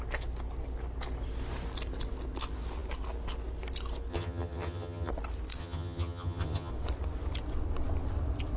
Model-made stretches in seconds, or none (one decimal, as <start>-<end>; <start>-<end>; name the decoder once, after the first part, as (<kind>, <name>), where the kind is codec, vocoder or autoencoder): 4.1-5.1 (vocoder, HiFi-GAN); 5.6-6.7